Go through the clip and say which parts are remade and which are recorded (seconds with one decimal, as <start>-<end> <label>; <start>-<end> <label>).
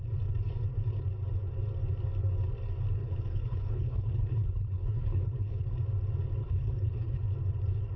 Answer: 0.0-3.0 recorded; 3.0-5.6 remade; 5.6-6.4 recorded; 6.4-7.2 remade; 7.2-8.0 recorded